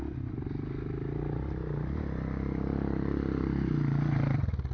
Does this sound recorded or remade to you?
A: recorded